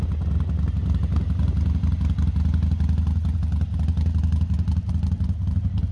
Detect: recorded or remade recorded